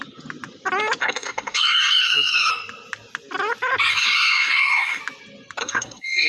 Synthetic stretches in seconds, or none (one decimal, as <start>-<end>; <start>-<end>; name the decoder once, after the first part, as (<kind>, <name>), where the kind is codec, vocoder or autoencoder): 1.0-2.5 (codec, SNAC); 3.9-5.0; 5.6-6.3